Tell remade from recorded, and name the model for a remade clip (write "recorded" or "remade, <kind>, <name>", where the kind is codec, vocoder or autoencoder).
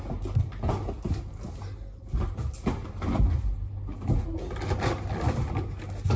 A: recorded